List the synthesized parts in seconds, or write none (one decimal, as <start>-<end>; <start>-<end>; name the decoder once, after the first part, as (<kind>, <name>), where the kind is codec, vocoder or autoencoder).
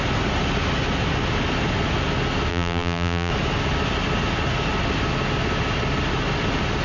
2.5-3.3 (vocoder, BigVGAN v2)